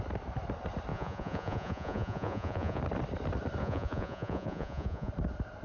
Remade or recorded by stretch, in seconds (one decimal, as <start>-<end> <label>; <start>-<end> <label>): 0.0-0.9 recorded; 0.9-2.8 remade; 2.8-3.6 recorded; 3.6-5.1 remade; 5.1-5.6 recorded